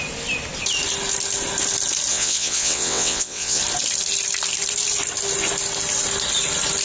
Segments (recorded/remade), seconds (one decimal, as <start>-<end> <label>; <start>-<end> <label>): 0.0-2.1 recorded; 2.1-3.6 remade; 3.6-6.8 recorded